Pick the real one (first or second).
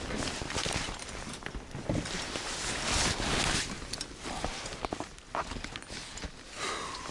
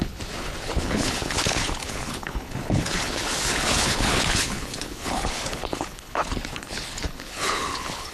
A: first